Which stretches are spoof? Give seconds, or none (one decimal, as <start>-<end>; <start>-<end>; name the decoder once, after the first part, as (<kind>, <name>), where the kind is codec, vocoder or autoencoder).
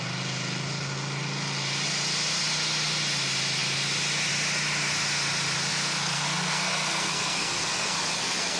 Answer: 5.7-8.6 (codec, SNAC)